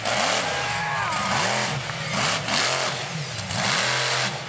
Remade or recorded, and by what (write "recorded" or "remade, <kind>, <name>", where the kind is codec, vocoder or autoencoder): recorded